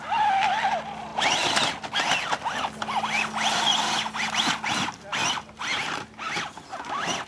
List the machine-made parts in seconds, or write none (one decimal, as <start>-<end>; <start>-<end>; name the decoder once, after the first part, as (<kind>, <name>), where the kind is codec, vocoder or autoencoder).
none